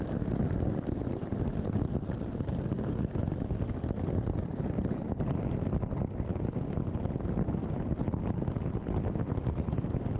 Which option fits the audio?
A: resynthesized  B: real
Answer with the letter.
B